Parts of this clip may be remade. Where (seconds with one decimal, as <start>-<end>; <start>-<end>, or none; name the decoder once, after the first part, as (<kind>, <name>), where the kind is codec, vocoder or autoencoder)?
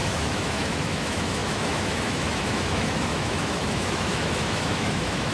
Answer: 0.0-5.3 (autoencoder, DAC-VAE)